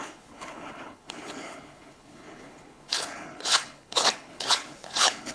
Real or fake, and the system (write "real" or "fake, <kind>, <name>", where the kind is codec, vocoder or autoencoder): fake, codec, HILCodec